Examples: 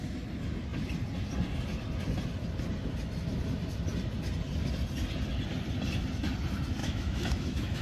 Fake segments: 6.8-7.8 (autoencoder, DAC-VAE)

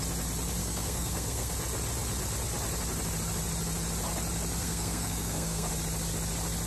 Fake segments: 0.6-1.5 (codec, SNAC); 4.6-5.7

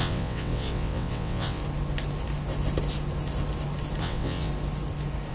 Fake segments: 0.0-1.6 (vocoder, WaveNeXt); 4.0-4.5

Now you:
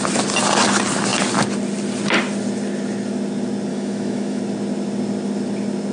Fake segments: 3.7-4.4 (autoencoder, DAC-VAE)